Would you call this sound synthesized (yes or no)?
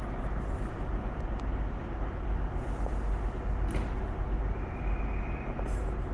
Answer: no